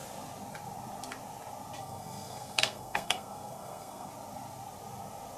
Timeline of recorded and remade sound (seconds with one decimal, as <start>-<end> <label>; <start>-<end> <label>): 0.0-1.8 recorded; 1.8-4.1 remade; 4.1-5.4 recorded